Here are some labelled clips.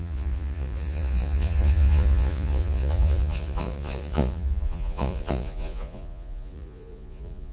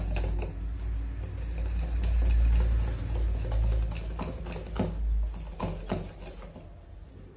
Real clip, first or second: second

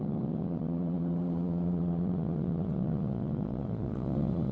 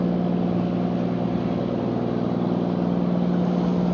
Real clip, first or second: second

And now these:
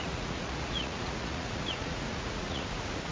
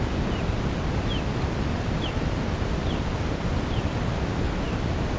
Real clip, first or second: second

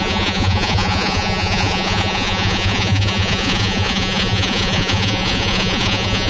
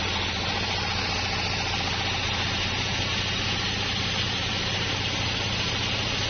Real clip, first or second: second